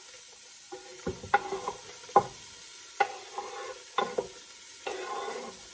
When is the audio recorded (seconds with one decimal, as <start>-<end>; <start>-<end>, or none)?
0.0-5.7